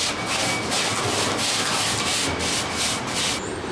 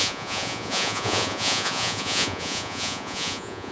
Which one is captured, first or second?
first